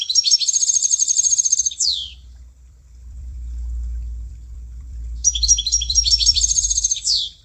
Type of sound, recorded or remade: remade